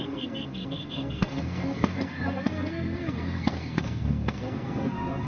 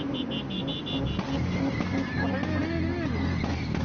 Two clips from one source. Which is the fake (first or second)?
first